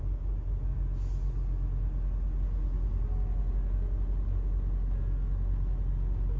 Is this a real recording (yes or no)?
yes